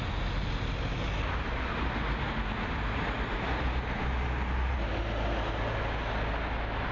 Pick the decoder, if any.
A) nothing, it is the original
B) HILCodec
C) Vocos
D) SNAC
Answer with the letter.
A